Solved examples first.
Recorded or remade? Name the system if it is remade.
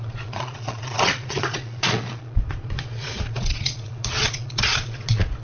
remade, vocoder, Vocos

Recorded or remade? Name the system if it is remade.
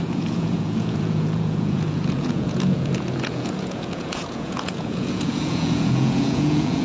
remade, vocoder, Vocos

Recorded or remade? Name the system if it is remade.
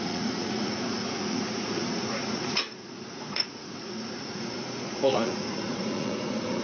remade, vocoder, Vocos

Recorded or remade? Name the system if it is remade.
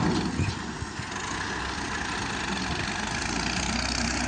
recorded